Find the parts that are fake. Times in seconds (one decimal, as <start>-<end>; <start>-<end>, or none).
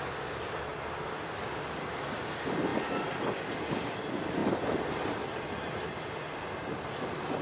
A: none